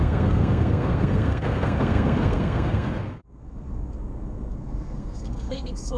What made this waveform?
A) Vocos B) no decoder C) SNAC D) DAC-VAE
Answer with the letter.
C